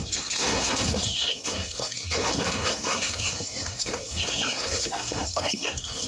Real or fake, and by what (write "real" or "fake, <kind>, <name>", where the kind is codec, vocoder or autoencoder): fake, codec, SNAC